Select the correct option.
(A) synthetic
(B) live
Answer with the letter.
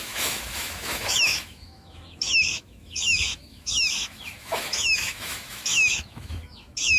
A